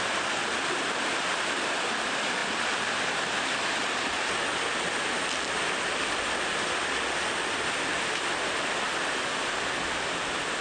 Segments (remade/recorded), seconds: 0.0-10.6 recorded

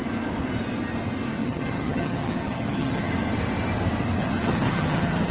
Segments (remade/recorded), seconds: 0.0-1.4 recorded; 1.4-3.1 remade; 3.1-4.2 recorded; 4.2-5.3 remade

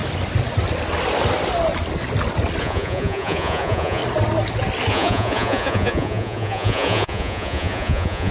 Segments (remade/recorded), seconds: 0.0-2.6 recorded; 2.6-4.0 remade; 4.0-4.9 recorded; 4.9-8.3 remade

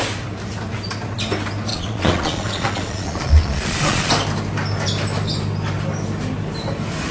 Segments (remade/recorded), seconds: 0.0-1.7 recorded; 1.7-4.1 remade; 4.1-7.1 recorded